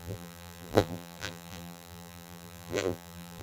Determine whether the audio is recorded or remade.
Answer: remade